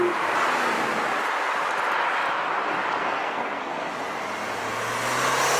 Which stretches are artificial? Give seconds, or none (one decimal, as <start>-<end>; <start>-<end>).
3.0-3.9